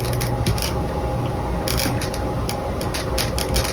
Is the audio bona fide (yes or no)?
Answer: yes